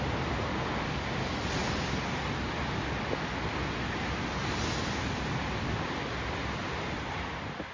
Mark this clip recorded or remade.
recorded